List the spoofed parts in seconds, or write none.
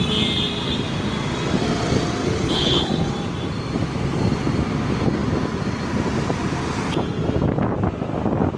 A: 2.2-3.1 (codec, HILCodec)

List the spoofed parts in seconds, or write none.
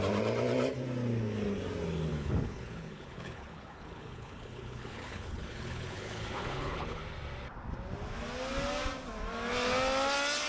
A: 2.1-7.0 (codec, HILCodec)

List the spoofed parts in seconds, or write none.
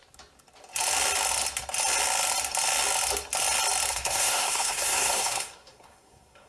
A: 3.9-6.5 (codec, SNAC)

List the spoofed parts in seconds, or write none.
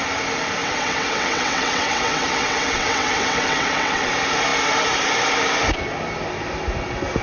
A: 0.6-4.1 (vocoder, WaveNeXt)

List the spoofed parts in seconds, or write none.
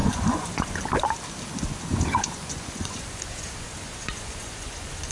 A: 0.0-0.8 (vocoder, Vocos); 1.9-5.1